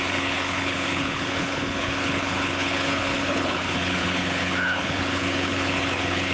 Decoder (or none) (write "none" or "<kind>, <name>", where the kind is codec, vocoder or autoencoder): codec, HILCodec